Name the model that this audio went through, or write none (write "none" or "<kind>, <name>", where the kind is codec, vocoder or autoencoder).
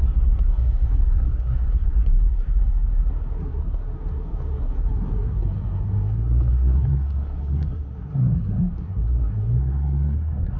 codec, SNAC